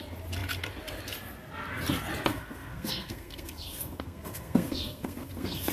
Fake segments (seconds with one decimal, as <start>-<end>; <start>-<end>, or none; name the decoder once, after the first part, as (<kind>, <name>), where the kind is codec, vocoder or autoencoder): 2.3-5.7 (codec, SNAC)

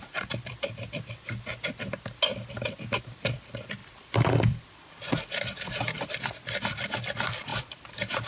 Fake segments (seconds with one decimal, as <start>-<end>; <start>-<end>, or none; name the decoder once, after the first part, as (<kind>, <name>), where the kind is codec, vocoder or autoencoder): 0.0-1.5 (vocoder, BigVGAN v2); 3.0-8.3

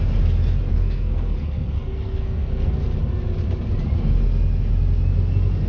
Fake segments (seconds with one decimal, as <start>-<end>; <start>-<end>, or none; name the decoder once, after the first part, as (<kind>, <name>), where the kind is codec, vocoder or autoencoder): 0.7-2.7 (codec, SNAC)

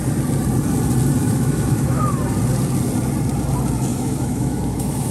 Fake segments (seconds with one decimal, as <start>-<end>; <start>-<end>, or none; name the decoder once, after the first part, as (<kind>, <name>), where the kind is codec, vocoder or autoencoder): 1.2-2.2 (autoencoder, DAC-VAE); 3.9-5.1

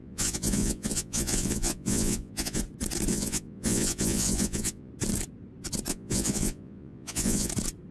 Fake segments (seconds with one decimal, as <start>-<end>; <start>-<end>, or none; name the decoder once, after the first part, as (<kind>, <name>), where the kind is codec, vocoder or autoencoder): 0.0-2.6 (vocoder, Vocos); 3.1-4.9; 5.9-7.5

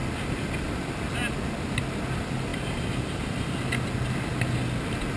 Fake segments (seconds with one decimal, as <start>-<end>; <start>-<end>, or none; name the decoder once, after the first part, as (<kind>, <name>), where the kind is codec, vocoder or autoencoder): 2.5-3.5 (vocoder, BigVGAN v2)